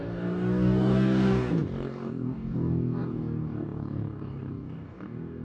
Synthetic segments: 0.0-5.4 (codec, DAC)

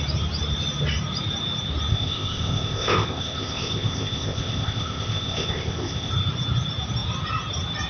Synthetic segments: 1.9-6.1 (codec, ZipCodec)

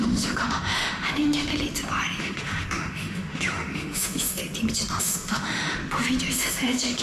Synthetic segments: 0.0-1.5 (autoencoder, DAC-VAE); 2.2-4.4; 5.0-5.8; 6.3-7.0

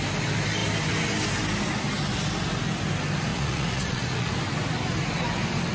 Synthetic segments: 3.3-4.3 (vocoder, Vocos)